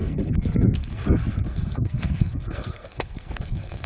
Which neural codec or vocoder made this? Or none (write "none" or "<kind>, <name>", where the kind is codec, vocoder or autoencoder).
codec, SNAC